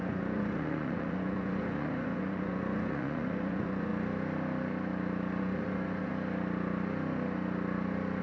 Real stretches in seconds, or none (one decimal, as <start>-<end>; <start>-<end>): 3.9-5.4; 6.1-8.2